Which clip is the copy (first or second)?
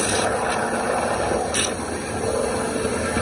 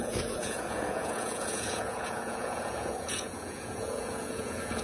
second